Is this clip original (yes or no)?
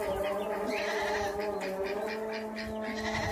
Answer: yes